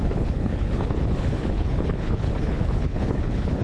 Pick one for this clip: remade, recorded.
remade